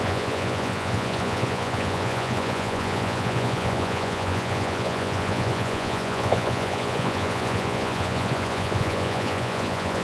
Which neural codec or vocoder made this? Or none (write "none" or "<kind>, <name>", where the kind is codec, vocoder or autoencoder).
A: vocoder, Vocos